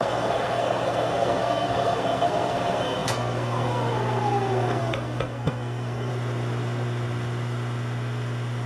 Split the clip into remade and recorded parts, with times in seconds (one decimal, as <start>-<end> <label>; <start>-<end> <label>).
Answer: 0.0-6.1 remade; 6.1-8.7 recorded